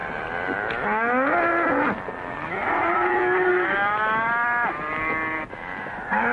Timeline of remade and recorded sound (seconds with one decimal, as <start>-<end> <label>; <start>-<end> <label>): 0.0-2.7 recorded; 2.7-3.2 remade; 3.2-5.8 recorded; 5.8-6.3 remade